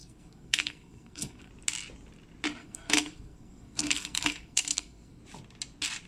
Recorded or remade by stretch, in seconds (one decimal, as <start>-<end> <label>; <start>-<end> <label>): 0.0-1.5 remade; 1.5-2.6 recorded; 2.6-5.2 remade; 5.2-6.1 recorded